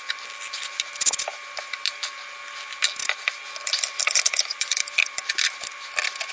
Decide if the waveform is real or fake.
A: real